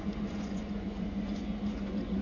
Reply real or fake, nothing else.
fake